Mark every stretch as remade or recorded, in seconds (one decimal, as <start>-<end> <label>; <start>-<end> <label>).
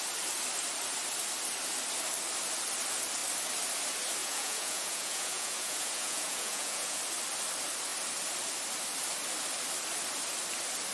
0.0-4.2 recorded; 4.2-7.0 remade; 7.0-10.9 recorded